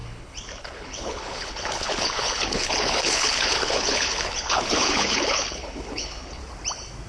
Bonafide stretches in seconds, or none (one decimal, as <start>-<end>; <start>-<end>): 6.4-7.1

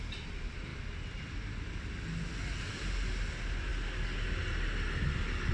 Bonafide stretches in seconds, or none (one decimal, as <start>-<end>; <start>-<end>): 0.0-5.5